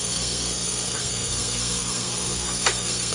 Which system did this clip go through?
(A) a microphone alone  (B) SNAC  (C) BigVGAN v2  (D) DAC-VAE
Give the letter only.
B